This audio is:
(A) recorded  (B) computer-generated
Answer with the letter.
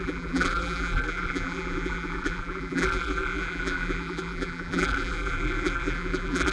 B